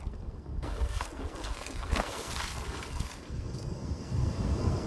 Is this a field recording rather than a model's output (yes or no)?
no